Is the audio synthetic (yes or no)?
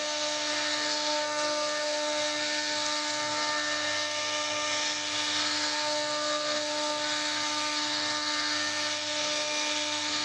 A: yes